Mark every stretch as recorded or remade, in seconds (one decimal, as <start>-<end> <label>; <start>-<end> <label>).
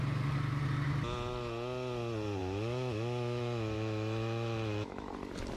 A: 0.0-2.4 recorded; 2.4-5.1 remade; 5.1-5.6 recorded